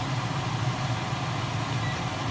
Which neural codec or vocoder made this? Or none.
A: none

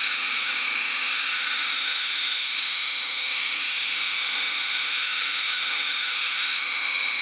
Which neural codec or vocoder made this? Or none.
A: autoencoder, DAC-VAE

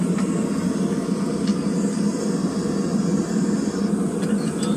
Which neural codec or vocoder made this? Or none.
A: none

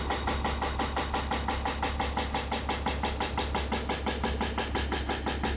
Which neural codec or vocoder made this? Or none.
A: none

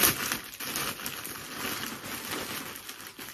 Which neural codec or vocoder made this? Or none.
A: none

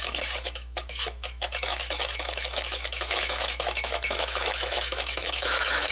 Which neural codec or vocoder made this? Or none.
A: autoencoder, DAC-VAE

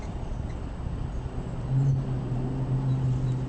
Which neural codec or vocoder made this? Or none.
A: none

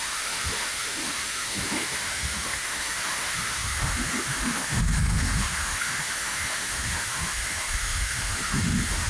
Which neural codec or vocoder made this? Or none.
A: autoencoder, DAC-VAE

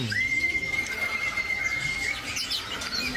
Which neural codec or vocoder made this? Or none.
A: none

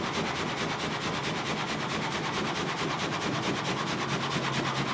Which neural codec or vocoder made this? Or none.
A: none